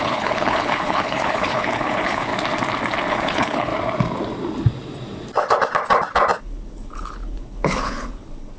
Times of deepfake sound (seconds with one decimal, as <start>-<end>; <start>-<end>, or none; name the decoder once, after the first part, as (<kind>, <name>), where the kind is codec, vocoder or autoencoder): 0.0-2.3 (codec, HILCodec); 3.1-3.7; 6.4-8.6